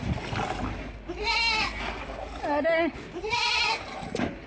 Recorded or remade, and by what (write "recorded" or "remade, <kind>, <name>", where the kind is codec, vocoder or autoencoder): recorded